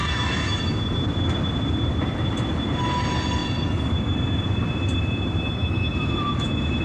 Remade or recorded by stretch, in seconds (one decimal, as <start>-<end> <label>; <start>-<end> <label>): 0.0-0.6 remade; 0.6-5.6 recorded; 5.6-6.8 remade